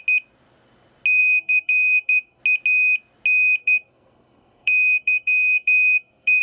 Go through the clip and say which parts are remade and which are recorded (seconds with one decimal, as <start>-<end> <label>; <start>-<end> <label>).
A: 0.0-1.2 recorded; 1.2-2.4 remade; 2.4-3.6 recorded; 3.6-6.4 remade